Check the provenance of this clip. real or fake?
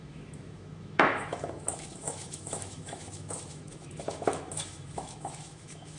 fake